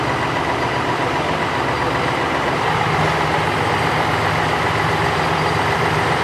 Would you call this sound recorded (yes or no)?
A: yes